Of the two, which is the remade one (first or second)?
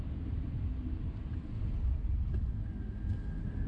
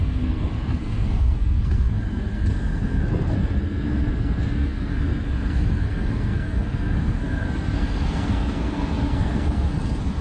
second